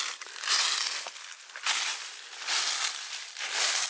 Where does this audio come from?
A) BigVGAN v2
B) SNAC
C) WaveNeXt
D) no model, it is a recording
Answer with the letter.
D